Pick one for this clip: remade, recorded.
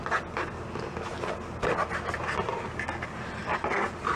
recorded